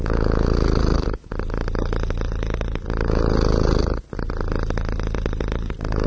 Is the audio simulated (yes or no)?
no